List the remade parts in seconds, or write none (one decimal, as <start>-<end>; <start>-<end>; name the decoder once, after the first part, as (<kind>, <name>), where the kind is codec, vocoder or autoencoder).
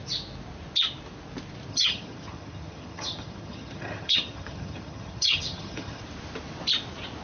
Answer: 1.7-6.0 (vocoder, HiFi-GAN)